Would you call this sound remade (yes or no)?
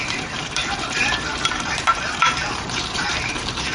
yes